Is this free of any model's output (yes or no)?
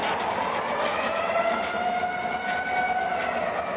yes